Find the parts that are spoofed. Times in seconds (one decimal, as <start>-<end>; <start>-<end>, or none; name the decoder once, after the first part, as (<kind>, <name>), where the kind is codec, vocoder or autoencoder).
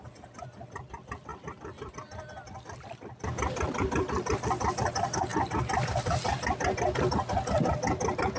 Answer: none